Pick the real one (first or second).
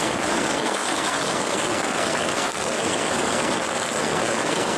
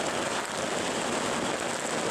second